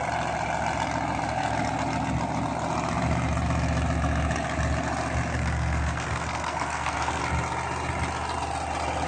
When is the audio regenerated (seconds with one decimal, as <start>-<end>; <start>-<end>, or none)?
5.3-7.2